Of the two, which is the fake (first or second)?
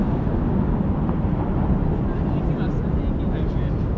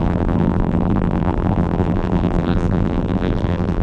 second